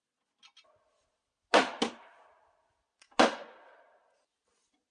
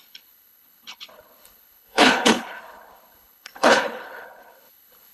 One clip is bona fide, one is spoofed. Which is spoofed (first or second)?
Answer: second